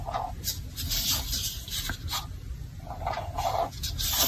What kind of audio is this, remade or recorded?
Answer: recorded